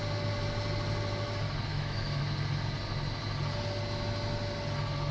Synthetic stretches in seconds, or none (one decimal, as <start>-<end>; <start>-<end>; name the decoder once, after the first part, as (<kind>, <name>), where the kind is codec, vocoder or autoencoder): 1.7-2.2 (autoencoder, DAC-VAE)